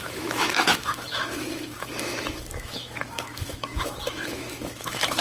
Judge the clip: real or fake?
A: fake